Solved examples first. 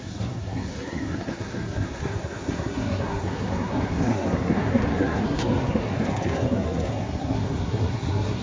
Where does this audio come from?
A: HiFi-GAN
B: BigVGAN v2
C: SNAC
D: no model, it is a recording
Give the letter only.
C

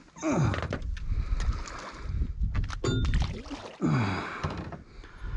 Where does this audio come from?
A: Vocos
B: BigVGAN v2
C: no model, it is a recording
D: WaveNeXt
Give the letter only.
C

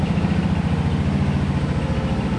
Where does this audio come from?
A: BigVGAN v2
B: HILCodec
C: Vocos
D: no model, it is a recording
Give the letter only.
D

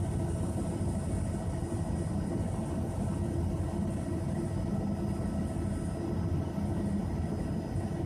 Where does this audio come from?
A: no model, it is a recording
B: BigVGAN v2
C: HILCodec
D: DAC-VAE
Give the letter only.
A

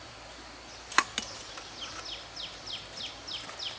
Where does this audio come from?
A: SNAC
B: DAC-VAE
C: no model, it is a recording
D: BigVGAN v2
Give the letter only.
C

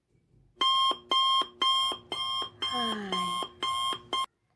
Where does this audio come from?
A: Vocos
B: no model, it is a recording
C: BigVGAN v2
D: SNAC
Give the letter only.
B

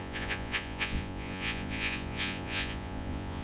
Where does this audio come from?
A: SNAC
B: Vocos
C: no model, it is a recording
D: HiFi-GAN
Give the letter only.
B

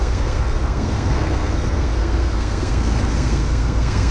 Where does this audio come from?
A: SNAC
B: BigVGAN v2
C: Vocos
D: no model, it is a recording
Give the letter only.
A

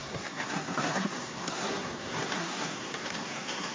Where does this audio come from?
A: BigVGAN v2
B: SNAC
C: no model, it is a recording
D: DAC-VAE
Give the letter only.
B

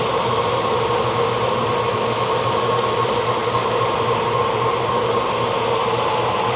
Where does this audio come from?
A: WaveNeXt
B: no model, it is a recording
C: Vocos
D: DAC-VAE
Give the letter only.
B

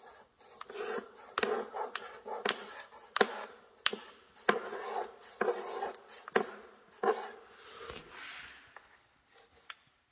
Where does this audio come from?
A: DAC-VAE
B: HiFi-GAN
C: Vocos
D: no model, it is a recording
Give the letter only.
D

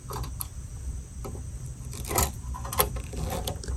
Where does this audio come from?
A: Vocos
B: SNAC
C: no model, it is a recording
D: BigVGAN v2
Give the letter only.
D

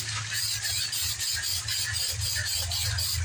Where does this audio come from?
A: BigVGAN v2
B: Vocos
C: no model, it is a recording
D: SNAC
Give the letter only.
C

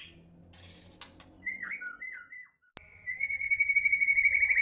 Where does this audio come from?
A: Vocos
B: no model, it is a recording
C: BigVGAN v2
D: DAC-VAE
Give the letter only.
B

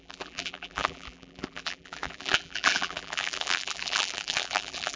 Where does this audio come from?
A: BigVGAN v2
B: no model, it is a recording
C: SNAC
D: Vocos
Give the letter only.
A